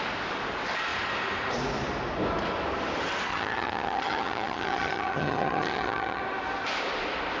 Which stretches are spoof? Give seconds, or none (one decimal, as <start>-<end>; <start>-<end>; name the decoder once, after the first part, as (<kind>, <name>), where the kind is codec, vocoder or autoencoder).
3.3-6.2 (vocoder, HiFi-GAN)